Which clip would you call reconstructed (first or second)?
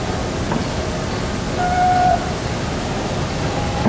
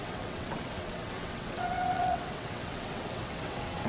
second